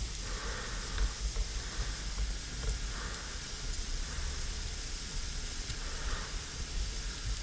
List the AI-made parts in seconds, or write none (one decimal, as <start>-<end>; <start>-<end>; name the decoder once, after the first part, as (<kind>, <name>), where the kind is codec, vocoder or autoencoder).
3.3-6.8 (vocoder, Vocos)